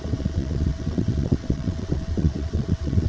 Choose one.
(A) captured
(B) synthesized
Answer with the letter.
B